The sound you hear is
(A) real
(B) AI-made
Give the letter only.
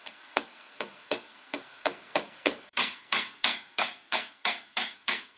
B